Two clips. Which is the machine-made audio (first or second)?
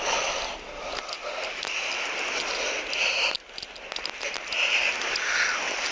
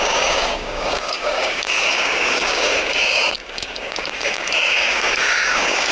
second